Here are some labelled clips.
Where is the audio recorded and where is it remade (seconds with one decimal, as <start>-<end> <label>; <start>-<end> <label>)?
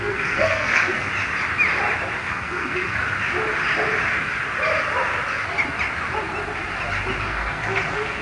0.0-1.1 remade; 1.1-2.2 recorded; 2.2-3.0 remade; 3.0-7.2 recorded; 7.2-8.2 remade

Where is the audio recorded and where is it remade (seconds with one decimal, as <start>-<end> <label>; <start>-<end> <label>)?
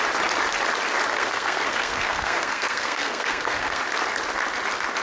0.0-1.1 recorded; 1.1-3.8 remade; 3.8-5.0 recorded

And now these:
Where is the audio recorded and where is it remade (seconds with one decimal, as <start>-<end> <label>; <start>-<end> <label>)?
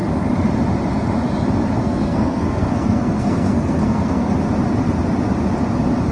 0.0-1.8 recorded; 1.8-4.3 remade; 4.3-6.1 recorded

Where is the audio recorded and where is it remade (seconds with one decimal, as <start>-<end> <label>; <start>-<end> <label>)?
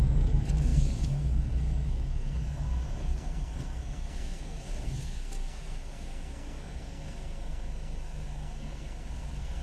0.0-9.6 remade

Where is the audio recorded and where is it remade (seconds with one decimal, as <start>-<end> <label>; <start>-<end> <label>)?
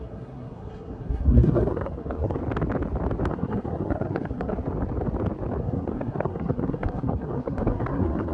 0.0-2.4 remade; 2.4-3.3 recorded; 3.3-4.5 remade; 4.5-5.6 recorded; 5.6-8.3 remade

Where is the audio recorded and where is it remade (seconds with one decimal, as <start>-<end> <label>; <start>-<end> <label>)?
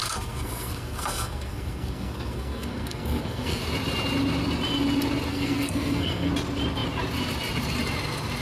0.0-3.6 remade; 3.6-5.3 recorded; 5.3-6.3 remade; 6.3-8.4 recorded